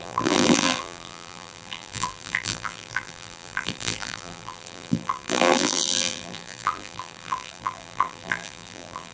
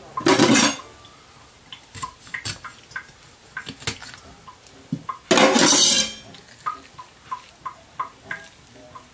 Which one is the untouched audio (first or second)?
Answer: second